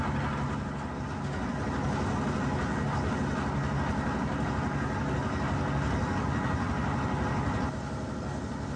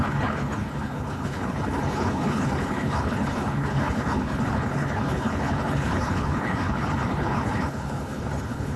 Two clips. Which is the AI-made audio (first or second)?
second